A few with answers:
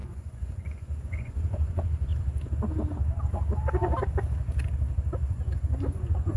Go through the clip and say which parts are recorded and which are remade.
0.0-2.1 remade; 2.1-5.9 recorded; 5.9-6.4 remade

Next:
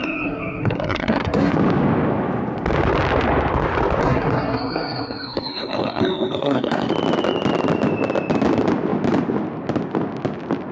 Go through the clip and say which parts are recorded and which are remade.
0.0-1.5 remade; 1.5-4.0 recorded; 4.0-6.9 remade; 6.9-10.7 recorded

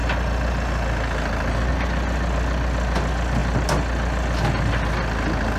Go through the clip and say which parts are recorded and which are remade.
0.0-5.6 recorded